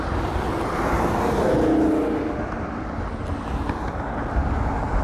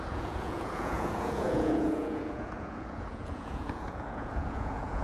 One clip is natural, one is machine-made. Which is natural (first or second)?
first